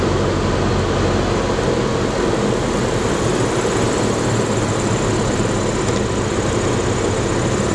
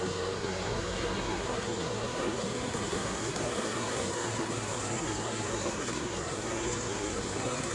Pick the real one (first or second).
first